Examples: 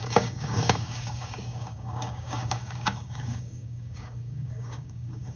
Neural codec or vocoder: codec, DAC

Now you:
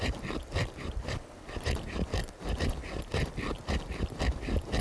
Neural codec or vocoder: none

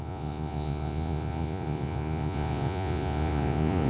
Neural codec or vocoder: vocoder, Vocos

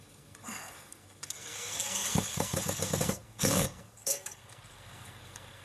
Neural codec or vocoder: codec, SNAC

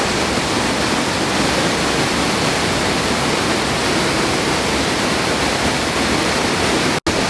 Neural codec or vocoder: none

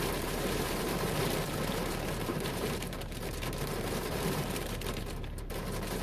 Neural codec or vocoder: vocoder, BigVGAN v2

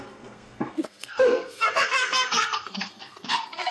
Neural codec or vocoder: codec, SNAC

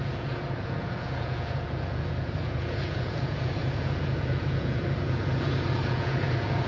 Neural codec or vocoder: vocoder, Vocos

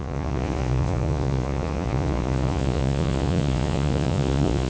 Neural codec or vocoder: vocoder, Vocos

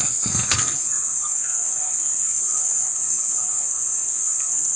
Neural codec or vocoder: codec, SNAC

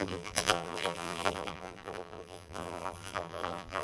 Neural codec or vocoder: vocoder, BigVGAN v2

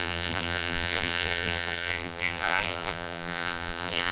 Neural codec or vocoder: vocoder, BigVGAN v2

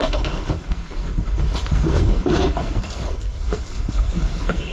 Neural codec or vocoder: codec, SNAC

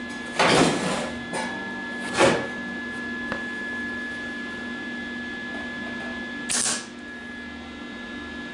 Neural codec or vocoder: none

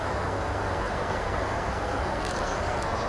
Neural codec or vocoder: codec, SNAC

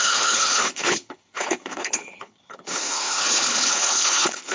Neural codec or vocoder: codec, HILCodec